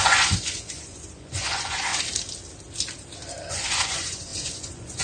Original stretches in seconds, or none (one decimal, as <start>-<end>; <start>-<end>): 1.9-3.5